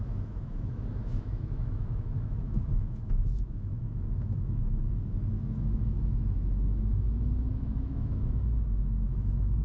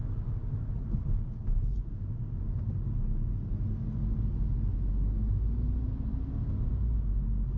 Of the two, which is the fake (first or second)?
first